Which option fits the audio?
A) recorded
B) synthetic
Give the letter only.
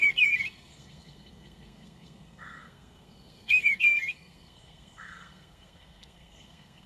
B